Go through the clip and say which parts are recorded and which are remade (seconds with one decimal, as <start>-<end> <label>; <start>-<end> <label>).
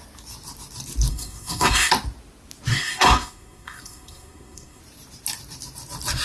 0.0-1.1 recorded; 1.1-1.9 remade; 1.9-2.7 recorded; 2.7-4.8 remade; 4.8-6.2 recorded